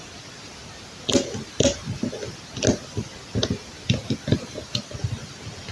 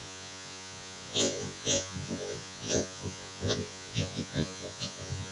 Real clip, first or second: first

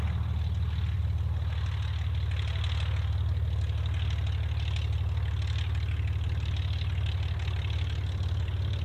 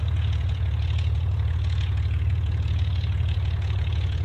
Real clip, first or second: first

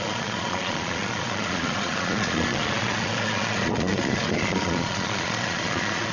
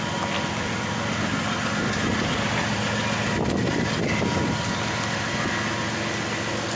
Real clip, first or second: second